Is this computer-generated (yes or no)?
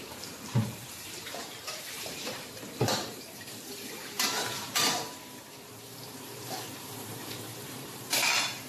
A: yes